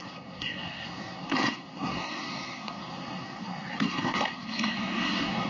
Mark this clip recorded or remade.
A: remade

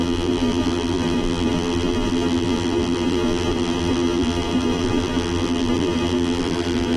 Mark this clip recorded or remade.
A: remade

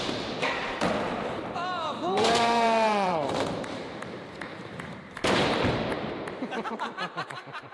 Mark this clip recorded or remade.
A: remade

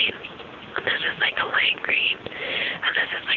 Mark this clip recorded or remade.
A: recorded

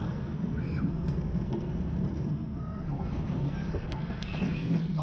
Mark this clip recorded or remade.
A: remade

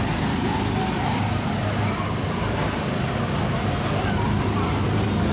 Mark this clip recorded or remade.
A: recorded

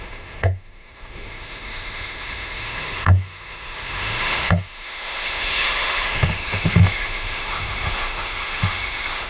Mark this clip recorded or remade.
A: remade